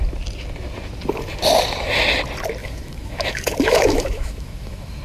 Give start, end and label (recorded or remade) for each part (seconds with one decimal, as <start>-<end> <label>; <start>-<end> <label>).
0.0-2.6 recorded; 2.6-5.0 remade